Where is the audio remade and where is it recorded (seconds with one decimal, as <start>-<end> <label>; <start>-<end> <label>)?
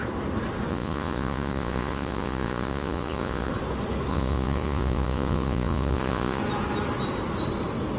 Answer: 0.0-0.7 recorded; 0.7-3.5 remade; 3.5-4.1 recorded; 4.1-6.4 remade; 6.4-8.0 recorded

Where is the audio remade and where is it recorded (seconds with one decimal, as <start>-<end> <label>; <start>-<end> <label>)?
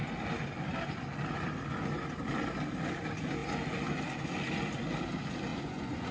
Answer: 0.0-5.5 recorded; 5.5-6.1 remade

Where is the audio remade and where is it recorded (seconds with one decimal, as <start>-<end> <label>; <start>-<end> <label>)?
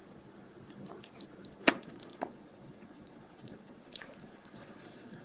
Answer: 0.0-1.7 recorded; 1.7-5.2 remade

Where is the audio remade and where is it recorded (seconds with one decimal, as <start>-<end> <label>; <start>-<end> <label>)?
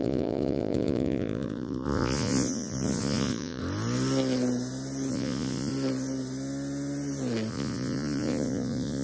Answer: 0.0-3.6 remade; 3.6-5.1 recorded; 5.1-5.7 remade; 5.7-7.5 recorded; 7.5-9.0 remade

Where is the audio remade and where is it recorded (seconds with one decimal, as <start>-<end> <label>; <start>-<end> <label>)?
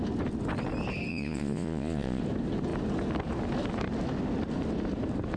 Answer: 0.0-1.1 recorded; 1.1-2.2 remade; 2.2-5.4 recorded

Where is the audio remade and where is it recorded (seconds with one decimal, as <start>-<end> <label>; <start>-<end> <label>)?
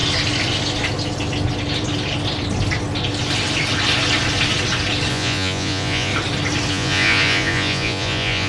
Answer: 0.0-5.1 recorded; 5.1-6.1 remade; 6.1-6.7 recorded; 6.7-8.5 remade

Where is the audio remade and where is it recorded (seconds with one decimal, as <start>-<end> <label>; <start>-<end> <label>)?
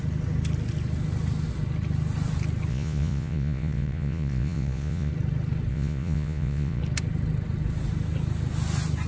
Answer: 0.0-2.7 recorded; 2.7-5.1 remade; 5.1-5.7 recorded; 5.7-6.8 remade; 6.8-9.1 recorded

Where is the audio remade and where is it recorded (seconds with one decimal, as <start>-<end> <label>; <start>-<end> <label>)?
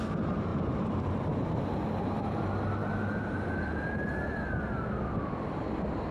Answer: 0.0-6.1 recorded